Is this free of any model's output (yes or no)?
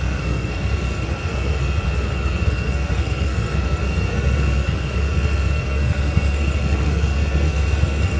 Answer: no